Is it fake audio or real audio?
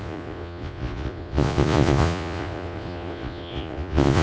fake